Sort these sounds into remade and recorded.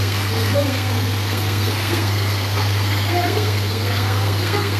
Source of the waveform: remade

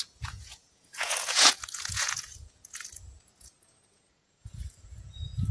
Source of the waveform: remade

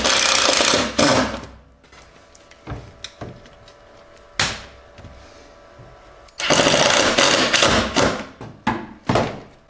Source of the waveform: recorded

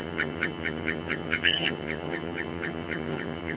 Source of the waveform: remade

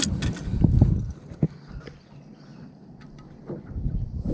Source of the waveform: recorded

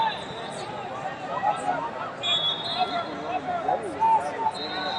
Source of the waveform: recorded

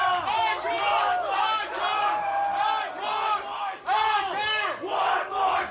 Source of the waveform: recorded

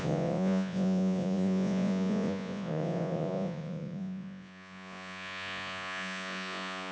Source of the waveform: remade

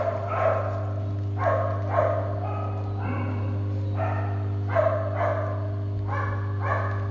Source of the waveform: recorded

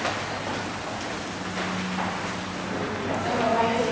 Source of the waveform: recorded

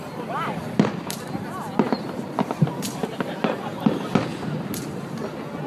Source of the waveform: recorded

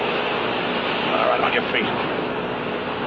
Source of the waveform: recorded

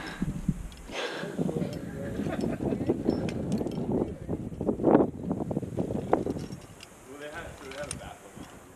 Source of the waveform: recorded